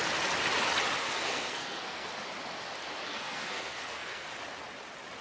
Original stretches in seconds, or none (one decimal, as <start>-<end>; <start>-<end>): 0.0-1.0; 2.1-3.1; 4.3-5.2